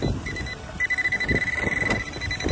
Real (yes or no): yes